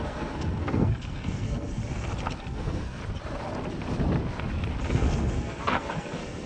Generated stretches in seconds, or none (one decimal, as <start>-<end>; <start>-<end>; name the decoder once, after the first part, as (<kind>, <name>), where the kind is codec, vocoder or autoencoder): 0.0-1.8 (codec, SNAC); 2.4-3.0; 4.9-6.5